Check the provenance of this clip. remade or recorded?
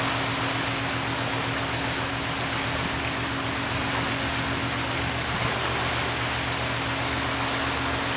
recorded